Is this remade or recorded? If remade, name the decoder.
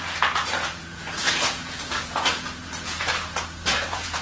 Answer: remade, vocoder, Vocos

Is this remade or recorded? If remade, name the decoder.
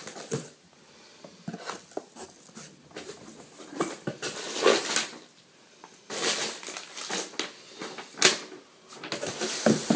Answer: recorded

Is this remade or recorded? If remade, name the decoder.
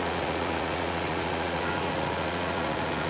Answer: remade, vocoder, Vocos